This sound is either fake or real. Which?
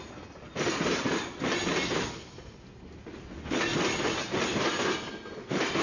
real